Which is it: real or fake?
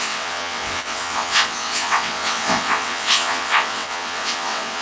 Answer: fake